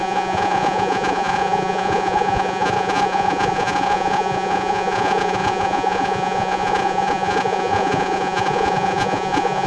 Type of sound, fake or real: fake